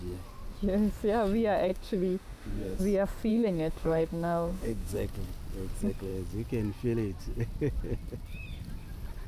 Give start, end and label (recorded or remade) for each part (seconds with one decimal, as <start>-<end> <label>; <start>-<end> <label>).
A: 0.0-1.7 recorded; 1.7-2.8 remade; 2.8-3.3 recorded; 3.3-4.9 remade; 4.9-9.3 recorded